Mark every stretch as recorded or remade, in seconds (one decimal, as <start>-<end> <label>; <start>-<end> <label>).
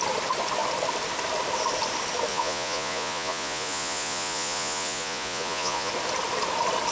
0.0-2.3 recorded; 2.3-5.9 remade; 5.9-6.9 recorded